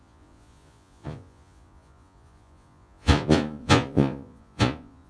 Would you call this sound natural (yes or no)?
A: no